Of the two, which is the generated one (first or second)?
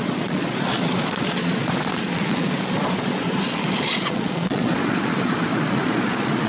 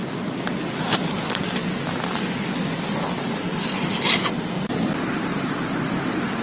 first